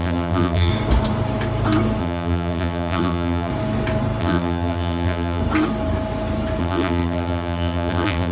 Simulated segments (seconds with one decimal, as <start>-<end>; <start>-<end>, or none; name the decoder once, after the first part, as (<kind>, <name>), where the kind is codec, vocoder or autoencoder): 0.0-0.7 (vocoder, BigVGAN v2); 2.0-3.5; 4.2-5.4; 6.6-8.3